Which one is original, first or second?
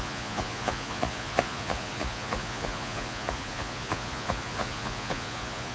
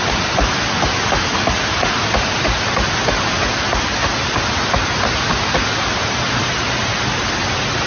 second